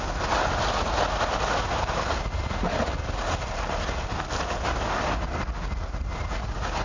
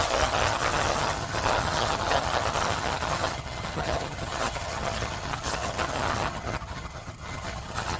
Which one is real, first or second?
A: first